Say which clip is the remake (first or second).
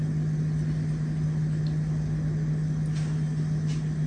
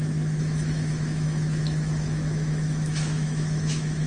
second